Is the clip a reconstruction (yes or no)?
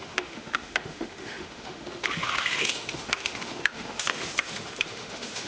yes